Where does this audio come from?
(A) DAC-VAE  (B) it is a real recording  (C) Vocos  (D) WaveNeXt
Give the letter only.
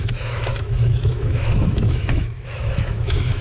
A